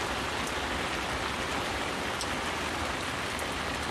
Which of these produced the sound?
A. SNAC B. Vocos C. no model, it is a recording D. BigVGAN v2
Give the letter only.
C